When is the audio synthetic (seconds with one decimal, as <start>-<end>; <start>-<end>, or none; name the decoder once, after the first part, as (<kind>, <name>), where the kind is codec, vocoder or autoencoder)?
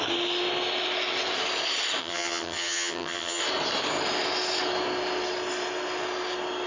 2.0-3.4 (vocoder, HiFi-GAN)